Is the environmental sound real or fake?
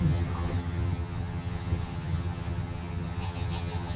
fake